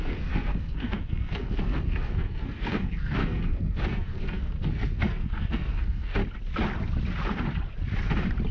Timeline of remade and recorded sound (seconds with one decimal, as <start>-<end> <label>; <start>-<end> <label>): 0.0-6.2 remade; 6.2-8.5 recorded

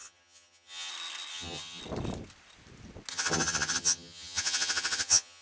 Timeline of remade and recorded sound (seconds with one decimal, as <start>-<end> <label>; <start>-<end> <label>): 0.0-0.9 remade; 0.9-1.3 recorded; 1.3-1.8 remade; 1.8-3.1 recorded; 3.1-5.4 remade

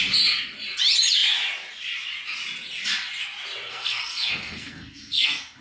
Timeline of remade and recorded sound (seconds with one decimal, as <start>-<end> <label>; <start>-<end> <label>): 0.0-3.7 recorded; 3.7-5.6 remade

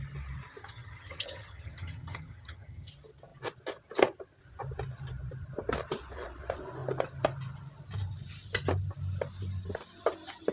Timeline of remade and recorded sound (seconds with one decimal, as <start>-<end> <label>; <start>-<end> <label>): 0.0-0.6 recorded; 0.6-2.9 remade; 2.9-10.5 recorded